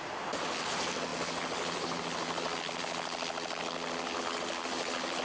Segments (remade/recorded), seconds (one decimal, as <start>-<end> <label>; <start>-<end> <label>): 0.0-5.2 recorded